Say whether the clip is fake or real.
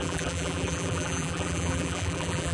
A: fake